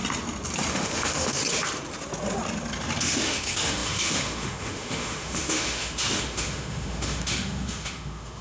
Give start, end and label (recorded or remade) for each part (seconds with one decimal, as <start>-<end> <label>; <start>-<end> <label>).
0.0-0.7 recorded; 0.7-1.4 remade; 1.4-3.0 recorded; 3.0-8.4 remade